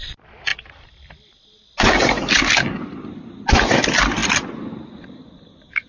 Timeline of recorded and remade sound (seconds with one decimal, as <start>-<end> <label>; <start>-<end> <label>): 0.0-5.9 recorded